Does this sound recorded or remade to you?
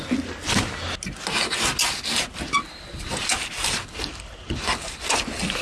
recorded